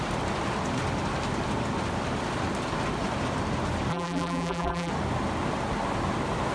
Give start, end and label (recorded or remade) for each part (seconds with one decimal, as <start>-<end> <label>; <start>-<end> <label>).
0.0-3.9 recorded; 3.9-4.9 remade; 4.9-6.5 recorded